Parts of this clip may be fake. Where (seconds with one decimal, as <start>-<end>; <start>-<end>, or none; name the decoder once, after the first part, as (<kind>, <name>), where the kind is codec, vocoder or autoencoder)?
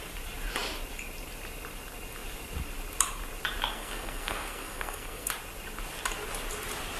3.7-5.3 (codec, SNAC)